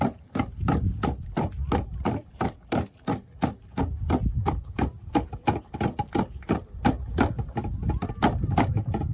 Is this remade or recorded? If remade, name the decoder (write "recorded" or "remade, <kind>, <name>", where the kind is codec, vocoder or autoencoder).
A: recorded